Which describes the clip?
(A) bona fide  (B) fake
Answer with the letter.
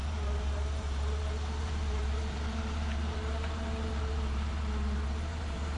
B